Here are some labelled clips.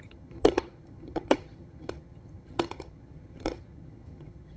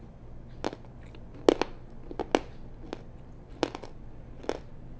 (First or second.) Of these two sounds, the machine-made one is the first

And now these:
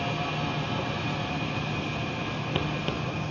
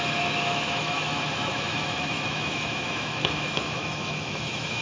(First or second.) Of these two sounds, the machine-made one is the second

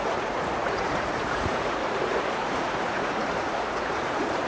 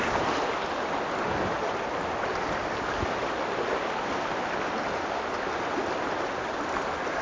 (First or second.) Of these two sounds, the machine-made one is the first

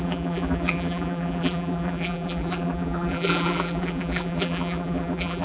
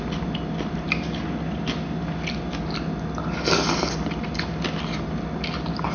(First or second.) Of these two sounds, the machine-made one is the first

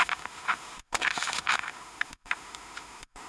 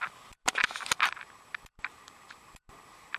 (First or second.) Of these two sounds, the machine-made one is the first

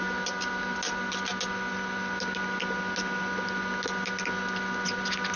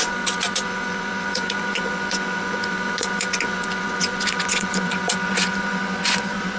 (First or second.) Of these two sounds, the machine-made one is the second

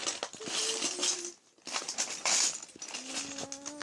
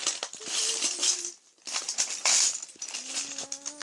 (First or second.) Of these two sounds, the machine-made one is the second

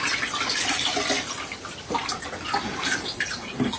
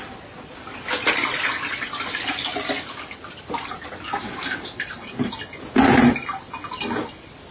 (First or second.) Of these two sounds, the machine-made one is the first